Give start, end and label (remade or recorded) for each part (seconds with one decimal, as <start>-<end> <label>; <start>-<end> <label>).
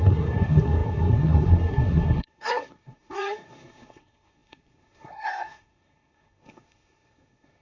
0.0-7.6 remade